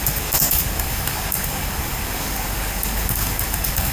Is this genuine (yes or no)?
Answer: no